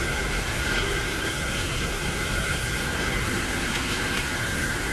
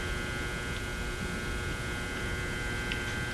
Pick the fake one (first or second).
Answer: first